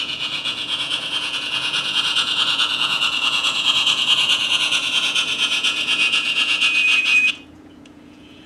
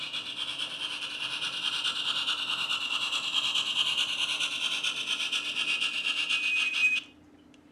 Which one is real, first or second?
second